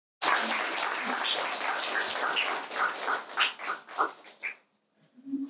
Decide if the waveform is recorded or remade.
recorded